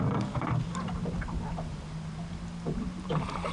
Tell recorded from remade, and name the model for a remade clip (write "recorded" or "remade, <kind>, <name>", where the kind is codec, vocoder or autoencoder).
recorded